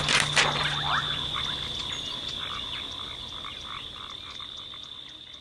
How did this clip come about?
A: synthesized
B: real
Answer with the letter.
B